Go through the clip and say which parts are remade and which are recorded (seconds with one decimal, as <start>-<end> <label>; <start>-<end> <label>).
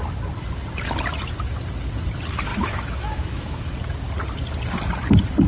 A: 0.0-2.5 recorded; 2.5-3.7 remade; 3.7-5.5 recorded